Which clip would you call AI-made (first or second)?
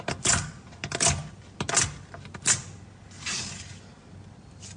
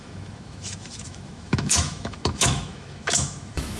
second